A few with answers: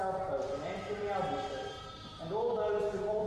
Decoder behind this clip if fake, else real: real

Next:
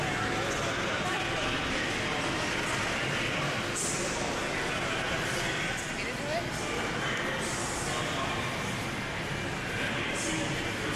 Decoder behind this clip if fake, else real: real